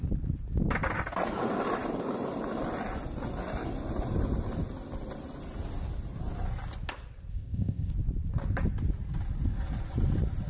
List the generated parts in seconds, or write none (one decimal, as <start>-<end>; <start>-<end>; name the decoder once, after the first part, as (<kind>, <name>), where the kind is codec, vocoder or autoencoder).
7.3-7.9 (codec, ZipCodec)